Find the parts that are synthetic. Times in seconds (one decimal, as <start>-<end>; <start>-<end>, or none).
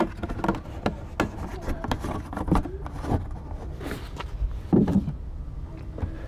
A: none